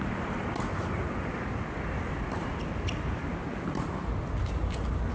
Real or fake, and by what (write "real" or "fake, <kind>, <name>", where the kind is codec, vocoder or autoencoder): real